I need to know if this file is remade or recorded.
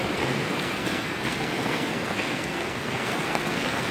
remade